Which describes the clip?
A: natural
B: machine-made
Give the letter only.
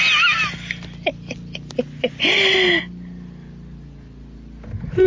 A